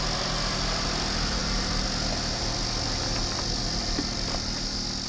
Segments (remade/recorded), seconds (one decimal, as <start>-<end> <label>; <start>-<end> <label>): 0.0-5.1 recorded

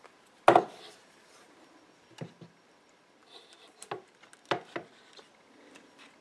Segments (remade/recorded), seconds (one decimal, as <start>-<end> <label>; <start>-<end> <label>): 0.0-6.2 recorded

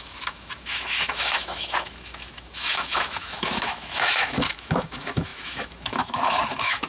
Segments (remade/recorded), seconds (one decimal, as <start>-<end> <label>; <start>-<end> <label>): 0.0-6.9 remade

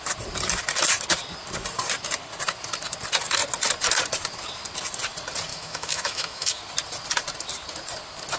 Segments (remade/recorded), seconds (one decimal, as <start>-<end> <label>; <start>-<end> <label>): 0.0-5.5 recorded; 5.5-6.6 remade; 6.6-8.4 recorded

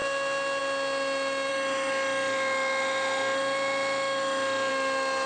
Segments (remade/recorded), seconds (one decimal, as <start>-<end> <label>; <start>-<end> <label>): 0.0-1.5 recorded; 1.5-4.7 remade; 4.7-5.3 recorded

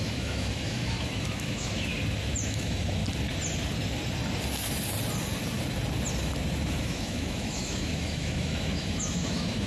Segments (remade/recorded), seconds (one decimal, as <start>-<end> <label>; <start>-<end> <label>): 0.0-1.9 remade; 1.9-2.5 recorded; 2.5-3.0 remade; 3.0-6.7 recorded; 6.7-9.7 remade

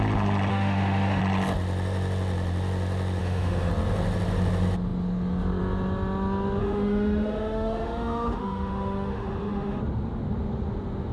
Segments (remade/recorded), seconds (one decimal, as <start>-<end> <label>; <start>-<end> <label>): 0.0-0.5 recorded; 0.5-1.2 remade; 1.2-3.2 recorded; 3.2-3.7 remade; 3.7-6.6 recorded; 6.6-9.8 remade; 9.8-11.1 recorded

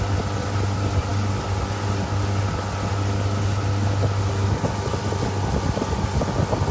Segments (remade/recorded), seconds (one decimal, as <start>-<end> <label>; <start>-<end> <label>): 0.0-6.7 recorded